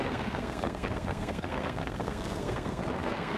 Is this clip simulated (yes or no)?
yes